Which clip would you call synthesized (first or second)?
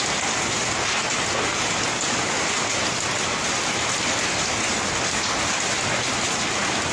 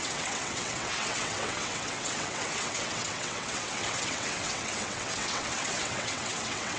second